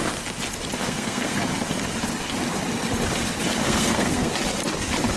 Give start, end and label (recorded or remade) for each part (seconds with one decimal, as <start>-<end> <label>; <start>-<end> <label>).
0.0-0.8 recorded; 0.8-1.5 remade; 1.5-3.6 recorded; 3.6-4.3 remade; 4.3-5.2 recorded